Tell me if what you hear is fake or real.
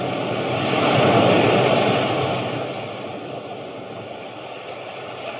real